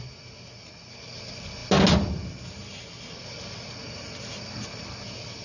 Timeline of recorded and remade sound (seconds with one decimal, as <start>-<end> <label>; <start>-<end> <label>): 0.0-5.4 recorded